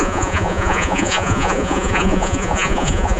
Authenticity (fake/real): fake